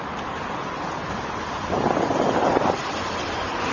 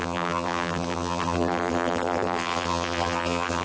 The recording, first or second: first